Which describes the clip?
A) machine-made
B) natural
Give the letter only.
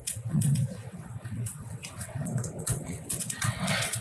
A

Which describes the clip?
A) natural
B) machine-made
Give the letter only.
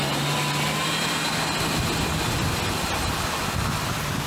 A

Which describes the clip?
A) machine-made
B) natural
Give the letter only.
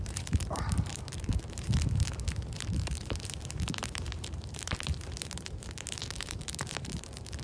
A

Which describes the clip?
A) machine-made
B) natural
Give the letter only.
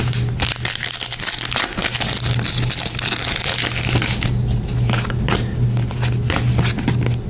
B